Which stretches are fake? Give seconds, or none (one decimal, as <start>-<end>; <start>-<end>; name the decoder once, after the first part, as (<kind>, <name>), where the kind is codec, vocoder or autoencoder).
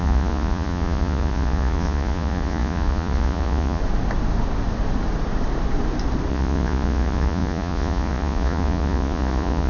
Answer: 0.0-3.8 (vocoder, Vocos); 6.3-9.7